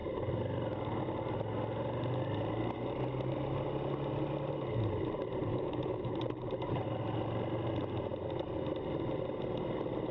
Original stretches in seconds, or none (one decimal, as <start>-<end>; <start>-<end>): 0.0-5.5; 6.1-10.1